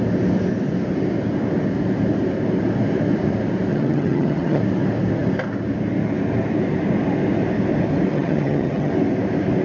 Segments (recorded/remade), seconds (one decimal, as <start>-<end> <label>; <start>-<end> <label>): 0.0-3.7 recorded; 3.7-4.6 remade; 4.6-8.1 recorded; 8.1-8.9 remade; 8.9-9.6 recorded

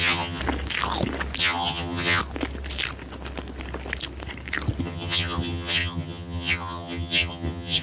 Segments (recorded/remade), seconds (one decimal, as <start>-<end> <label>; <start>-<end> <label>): 0.0-0.4 remade; 0.4-1.4 recorded; 1.4-2.2 remade; 2.2-4.8 recorded; 4.8-7.8 remade

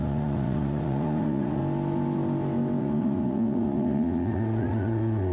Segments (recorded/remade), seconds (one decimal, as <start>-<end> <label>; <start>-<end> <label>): 0.0-1.6 remade; 1.6-2.8 recorded; 2.8-5.3 remade

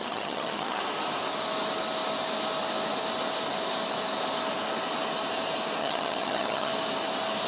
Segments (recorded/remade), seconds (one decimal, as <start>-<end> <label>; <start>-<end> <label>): 0.0-0.8 remade; 0.8-5.8 recorded; 5.8-6.7 remade; 6.7-7.5 recorded